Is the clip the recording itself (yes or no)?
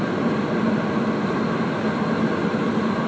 yes